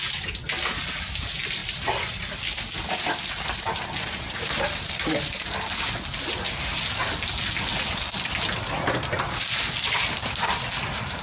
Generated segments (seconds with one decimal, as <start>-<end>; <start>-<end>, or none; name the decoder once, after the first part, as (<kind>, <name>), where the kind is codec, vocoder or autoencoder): none